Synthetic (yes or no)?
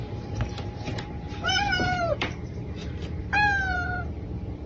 yes